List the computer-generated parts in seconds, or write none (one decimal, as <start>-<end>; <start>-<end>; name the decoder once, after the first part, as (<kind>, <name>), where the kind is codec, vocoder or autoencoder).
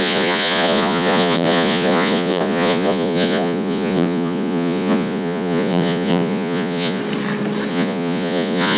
0.0-7.0 (vocoder, Vocos); 7.7-8.8